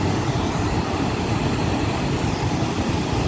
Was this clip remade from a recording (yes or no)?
no